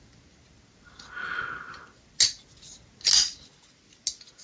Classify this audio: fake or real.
real